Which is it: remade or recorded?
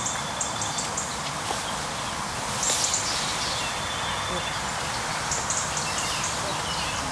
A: recorded